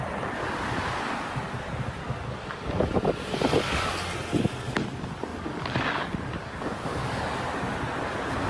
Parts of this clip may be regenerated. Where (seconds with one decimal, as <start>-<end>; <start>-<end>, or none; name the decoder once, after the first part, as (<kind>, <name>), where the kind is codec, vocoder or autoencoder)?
2.0-3.9 (codec, DAC); 5.3-7.4